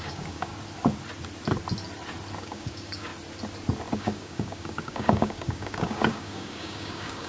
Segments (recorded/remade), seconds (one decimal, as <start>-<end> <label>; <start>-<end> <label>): 0.0-0.5 remade; 0.5-2.4 recorded; 2.4-3.1 remade; 3.1-3.9 recorded; 3.9-7.3 remade